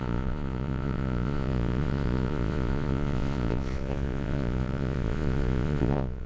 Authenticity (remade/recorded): remade